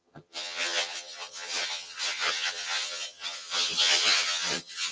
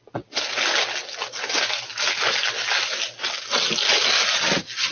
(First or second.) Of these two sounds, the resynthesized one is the first